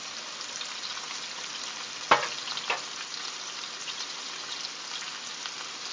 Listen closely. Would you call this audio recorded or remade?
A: recorded